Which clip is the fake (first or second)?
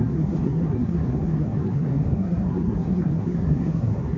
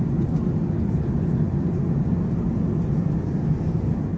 first